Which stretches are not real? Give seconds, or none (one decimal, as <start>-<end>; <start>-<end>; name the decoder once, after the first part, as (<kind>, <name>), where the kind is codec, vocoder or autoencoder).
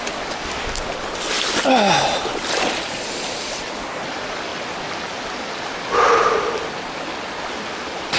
none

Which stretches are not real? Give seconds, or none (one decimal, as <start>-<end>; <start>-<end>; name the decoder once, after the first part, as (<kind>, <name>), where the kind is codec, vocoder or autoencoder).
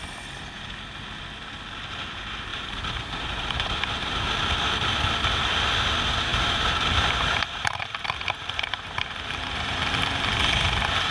2.5-4.2 (vocoder, BigVGAN v2); 6.3-9.9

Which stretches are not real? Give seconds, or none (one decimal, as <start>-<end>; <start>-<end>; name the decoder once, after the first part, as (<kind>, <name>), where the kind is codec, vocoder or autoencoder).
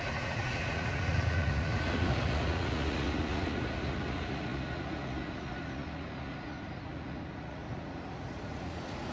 0.0-9.1 (vocoder, Vocos)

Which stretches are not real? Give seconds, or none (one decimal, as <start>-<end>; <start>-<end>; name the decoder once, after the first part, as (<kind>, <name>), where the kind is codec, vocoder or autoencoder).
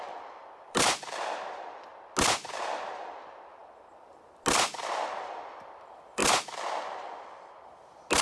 0.0-1.9 (vocoder, BigVGAN v2); 2.5-3.6; 4.8-6.2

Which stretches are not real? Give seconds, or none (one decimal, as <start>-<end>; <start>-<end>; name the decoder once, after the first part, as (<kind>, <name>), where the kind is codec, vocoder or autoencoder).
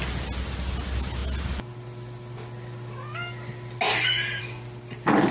none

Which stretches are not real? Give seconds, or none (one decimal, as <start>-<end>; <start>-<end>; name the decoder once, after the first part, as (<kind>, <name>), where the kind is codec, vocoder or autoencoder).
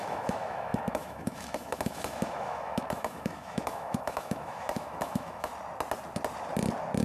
0.0-5.5 (autoencoder, DAC-VAE)